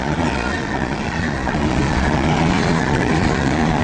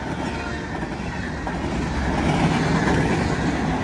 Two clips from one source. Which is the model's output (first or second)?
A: first